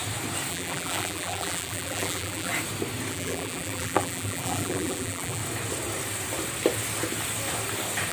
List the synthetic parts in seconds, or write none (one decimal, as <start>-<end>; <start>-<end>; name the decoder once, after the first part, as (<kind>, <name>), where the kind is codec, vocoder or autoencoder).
0.5-2.5 (vocoder, BigVGAN v2); 3.1-5.4